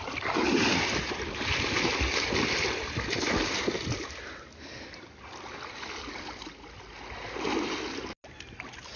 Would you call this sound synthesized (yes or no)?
no